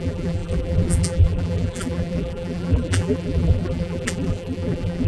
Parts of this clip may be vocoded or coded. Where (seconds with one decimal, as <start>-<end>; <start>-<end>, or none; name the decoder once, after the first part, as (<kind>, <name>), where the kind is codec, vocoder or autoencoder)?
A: 0.0-5.1 (vocoder, BigVGAN v2)